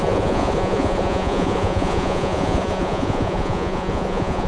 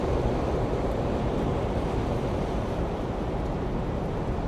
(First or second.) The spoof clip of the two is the first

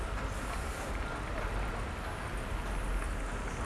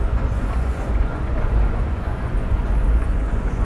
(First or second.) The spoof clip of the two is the second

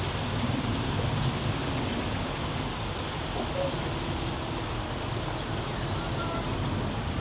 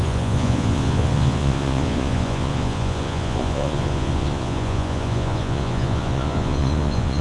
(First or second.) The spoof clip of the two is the second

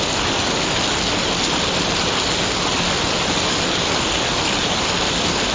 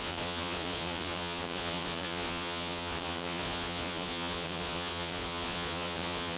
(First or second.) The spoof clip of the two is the second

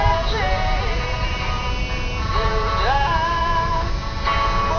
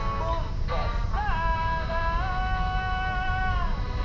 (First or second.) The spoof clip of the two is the first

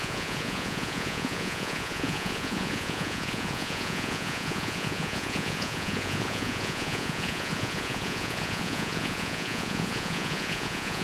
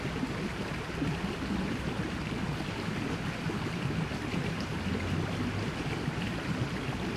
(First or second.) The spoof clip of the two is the first